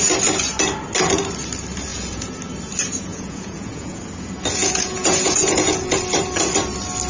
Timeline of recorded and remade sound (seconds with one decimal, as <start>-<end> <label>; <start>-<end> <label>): 0.0-1.9 recorded; 1.9-2.4 remade; 2.4-3.1 recorded; 3.1-4.0 remade; 4.0-4.6 recorded; 4.6-6.0 remade; 6.0-7.1 recorded